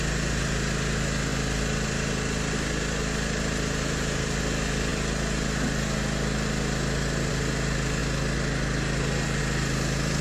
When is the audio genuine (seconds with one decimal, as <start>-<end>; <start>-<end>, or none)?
0.0-10.2

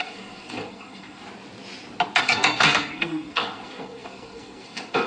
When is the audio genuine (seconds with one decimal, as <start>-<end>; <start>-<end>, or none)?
1.2-2.2

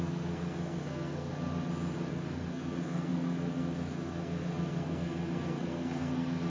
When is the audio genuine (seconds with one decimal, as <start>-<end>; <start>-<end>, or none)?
1.3-2.1

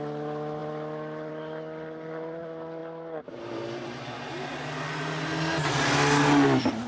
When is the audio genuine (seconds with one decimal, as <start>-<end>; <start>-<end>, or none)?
0.0-6.9

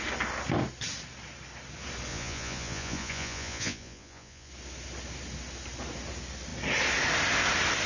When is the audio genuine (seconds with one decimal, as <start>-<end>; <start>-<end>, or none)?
0.0-2.1; 4.5-7.9

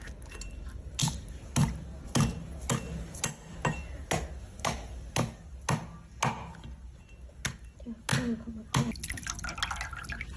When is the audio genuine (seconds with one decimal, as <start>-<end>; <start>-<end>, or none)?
0.0-10.4

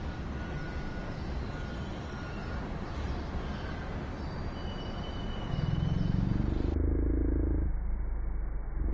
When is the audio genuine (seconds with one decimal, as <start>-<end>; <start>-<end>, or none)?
0.0-0.9; 1.5-1.9; 2.5-8.9